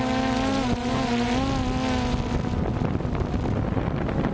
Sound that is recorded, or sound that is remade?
recorded